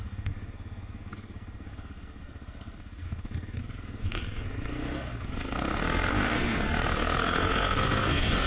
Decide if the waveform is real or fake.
fake